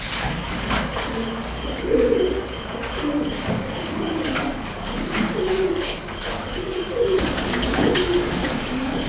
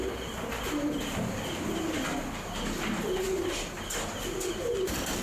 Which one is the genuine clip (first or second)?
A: second